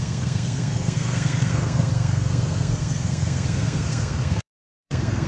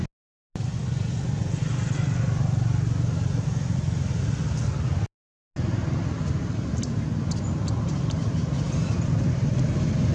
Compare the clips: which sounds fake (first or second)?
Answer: first